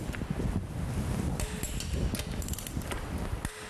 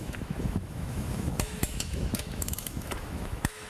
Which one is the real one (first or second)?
first